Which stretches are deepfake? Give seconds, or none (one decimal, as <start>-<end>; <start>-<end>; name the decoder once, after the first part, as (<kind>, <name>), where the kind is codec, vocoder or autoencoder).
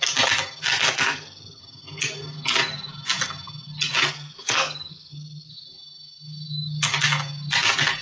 0.7-1.6 (codec, SNAC); 4.1-5.5